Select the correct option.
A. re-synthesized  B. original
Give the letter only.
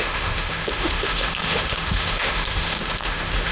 A